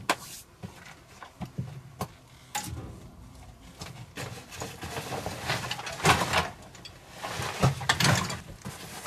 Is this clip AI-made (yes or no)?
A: no